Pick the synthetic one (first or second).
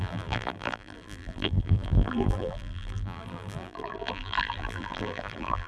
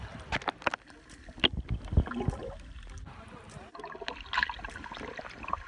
first